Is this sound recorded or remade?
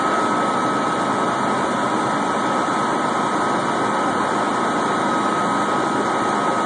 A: recorded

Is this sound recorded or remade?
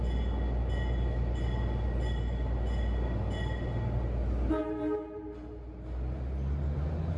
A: recorded